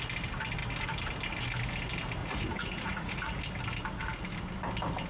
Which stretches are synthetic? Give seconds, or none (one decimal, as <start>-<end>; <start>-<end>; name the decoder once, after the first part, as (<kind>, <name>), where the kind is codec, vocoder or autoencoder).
2.2-3.4 (vocoder, Vocos)